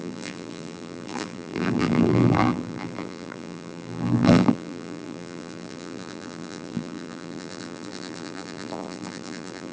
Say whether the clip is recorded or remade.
remade